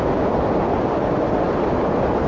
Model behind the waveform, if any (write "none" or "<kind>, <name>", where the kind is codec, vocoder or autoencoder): none